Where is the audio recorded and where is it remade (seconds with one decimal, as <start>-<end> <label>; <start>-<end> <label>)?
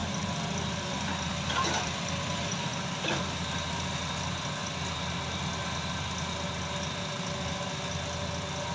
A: 0.0-3.3 remade; 3.3-8.7 recorded